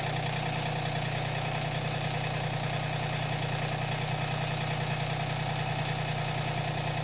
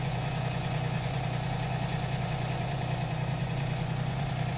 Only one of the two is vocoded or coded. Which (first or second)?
second